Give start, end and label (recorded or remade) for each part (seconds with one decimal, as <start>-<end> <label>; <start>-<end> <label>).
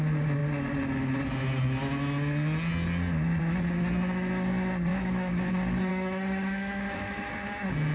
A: 0.0-4.9 recorded; 4.9-5.5 remade; 5.5-5.9 recorded; 5.9-7.3 remade; 7.3-7.9 recorded